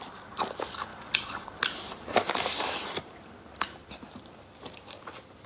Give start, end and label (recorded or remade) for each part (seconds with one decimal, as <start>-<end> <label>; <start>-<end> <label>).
0.0-0.9 recorded; 0.9-4.2 remade; 4.2-5.5 recorded